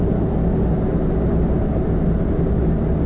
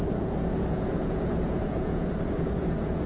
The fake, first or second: second